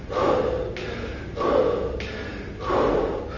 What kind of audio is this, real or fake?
real